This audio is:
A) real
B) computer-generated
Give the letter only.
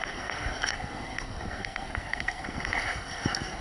B